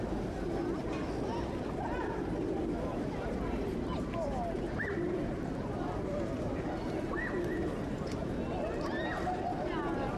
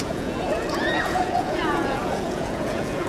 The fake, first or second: second